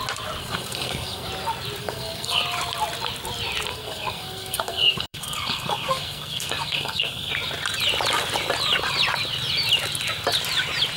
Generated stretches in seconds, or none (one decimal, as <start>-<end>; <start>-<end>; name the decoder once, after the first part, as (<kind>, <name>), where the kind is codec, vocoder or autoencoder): 0.4-1.3 (codec, SNAC); 1.8-2.4; 3.7-7.3